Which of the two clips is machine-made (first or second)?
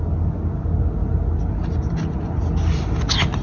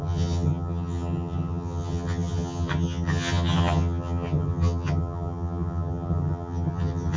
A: second